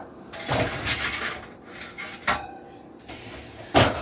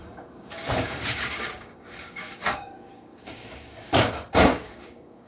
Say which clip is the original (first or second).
first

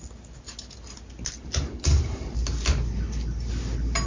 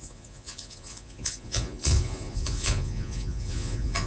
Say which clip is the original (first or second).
first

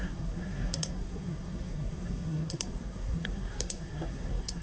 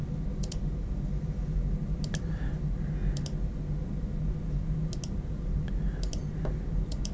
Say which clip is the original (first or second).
second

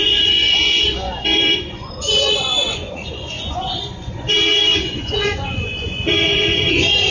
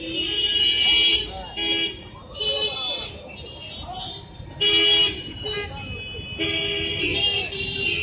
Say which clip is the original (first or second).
second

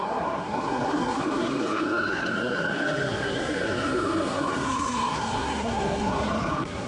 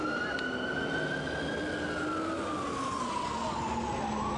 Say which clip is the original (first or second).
second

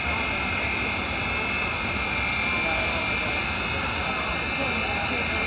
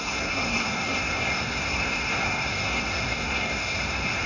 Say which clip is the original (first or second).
first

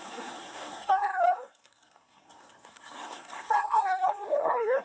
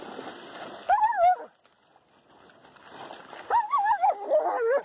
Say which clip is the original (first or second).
second